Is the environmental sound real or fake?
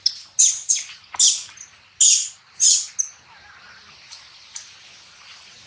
real